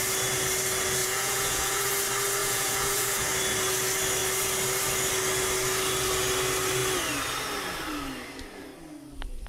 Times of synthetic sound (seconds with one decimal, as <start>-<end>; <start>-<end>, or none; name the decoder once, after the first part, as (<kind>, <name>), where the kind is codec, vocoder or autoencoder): 1.0-1.9 (vocoder, Vocos); 2.4-3.3